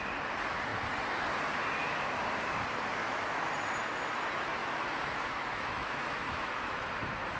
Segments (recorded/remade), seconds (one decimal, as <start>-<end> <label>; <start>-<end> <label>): 0.0-3.0 recorded; 3.0-3.5 remade; 3.5-4.6 recorded; 4.6-6.9 remade; 6.9-7.4 recorded